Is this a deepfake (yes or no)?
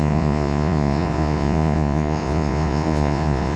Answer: yes